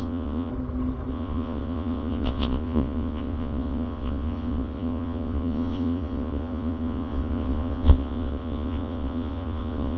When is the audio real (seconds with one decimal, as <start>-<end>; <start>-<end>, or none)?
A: 0.5-1.1